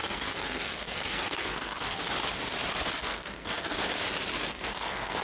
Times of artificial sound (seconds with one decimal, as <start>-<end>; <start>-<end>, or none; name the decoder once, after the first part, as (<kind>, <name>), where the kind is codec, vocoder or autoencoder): 0.0-2.0 (codec, SNAC); 3.0-3.8; 4.5-5.2